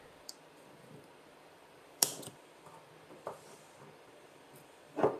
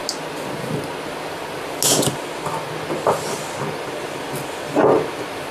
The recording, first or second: second